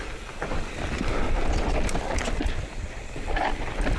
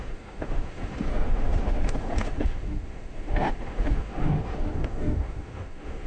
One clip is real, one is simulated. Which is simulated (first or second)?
second